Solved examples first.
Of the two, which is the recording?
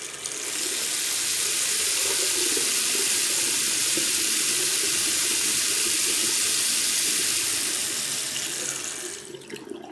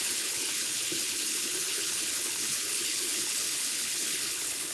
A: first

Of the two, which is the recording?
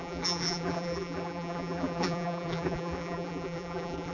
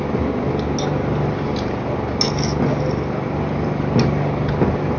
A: second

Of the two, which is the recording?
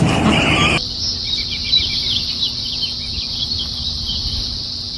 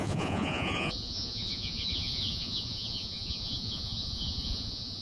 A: first